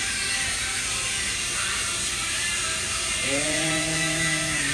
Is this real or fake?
fake